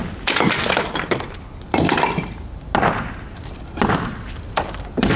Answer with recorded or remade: recorded